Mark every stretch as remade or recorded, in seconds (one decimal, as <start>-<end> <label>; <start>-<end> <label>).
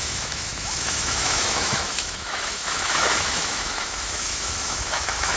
0.0-5.4 remade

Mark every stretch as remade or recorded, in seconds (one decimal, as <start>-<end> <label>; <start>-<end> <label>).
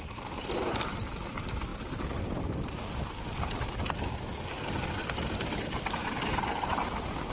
0.0-1.7 remade; 1.7-4.6 recorded; 4.6-7.3 remade